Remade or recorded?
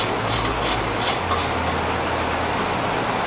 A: recorded